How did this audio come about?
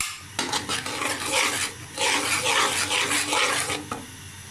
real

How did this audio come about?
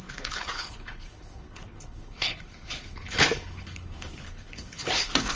fake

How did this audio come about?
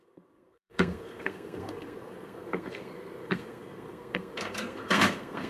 fake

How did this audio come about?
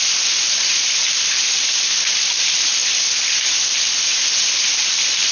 real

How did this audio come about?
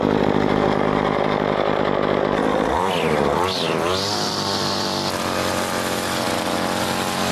fake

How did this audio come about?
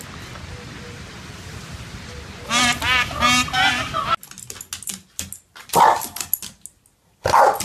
real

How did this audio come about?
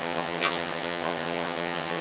fake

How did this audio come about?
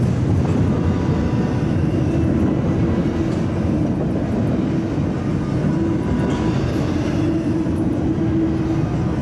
real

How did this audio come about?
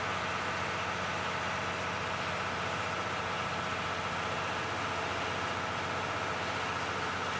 real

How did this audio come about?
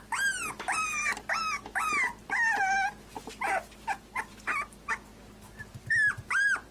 real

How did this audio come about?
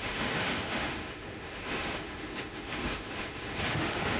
fake